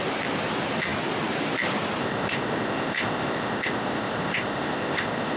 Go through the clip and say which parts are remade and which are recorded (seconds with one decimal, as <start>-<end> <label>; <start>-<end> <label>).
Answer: 0.0-2.0 recorded; 2.0-5.4 remade